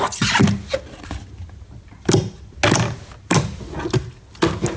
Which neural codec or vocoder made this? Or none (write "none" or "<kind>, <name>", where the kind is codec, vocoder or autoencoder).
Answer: none